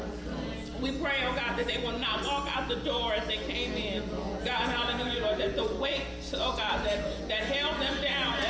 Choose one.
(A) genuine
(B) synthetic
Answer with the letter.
A